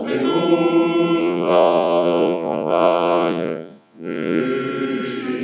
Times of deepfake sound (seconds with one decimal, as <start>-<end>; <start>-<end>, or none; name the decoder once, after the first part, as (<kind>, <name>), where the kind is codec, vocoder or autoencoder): 1.2-4.4 (vocoder, Vocos)